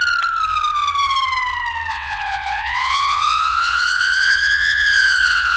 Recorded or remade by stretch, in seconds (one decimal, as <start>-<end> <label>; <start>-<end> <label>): 0.0-1.9 recorded; 1.9-5.6 remade